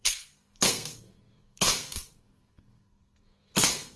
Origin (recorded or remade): remade